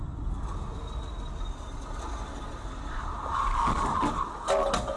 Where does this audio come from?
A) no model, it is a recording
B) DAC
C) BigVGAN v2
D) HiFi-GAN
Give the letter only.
A